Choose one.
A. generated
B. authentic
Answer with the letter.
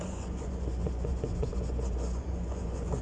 A